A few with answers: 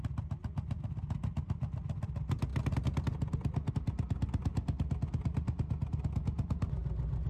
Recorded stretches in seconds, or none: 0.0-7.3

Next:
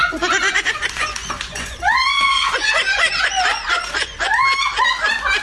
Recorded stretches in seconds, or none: 4.3-5.4